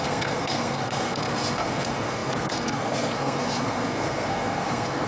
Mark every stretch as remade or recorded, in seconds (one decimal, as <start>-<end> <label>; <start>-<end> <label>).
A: 0.0-5.1 remade